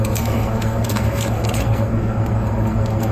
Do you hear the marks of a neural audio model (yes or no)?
yes